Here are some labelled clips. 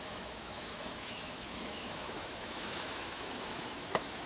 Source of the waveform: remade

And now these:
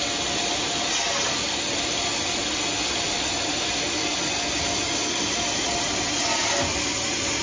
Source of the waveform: recorded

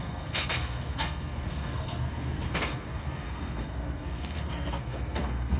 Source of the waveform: remade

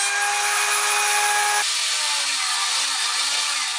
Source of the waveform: recorded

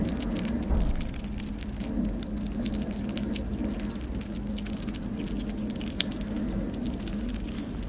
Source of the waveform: recorded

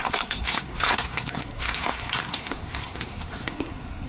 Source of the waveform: remade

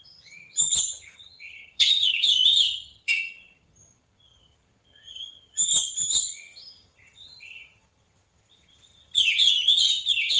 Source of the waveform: remade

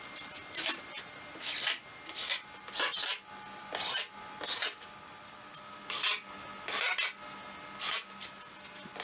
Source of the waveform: recorded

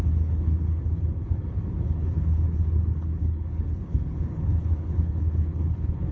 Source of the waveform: remade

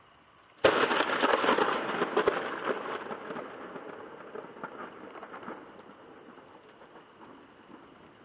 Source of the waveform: recorded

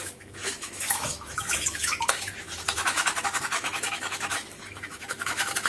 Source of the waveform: remade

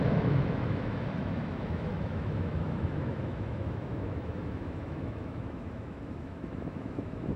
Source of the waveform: remade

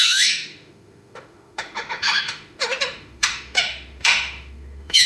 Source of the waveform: remade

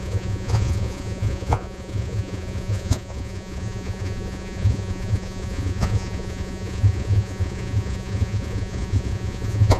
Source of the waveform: remade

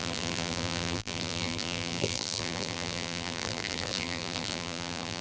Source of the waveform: remade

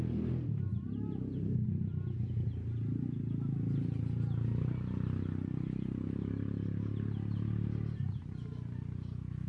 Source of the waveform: recorded